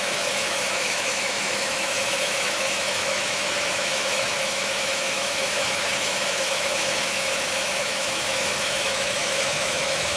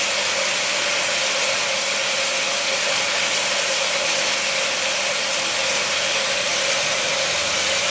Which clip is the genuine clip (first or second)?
second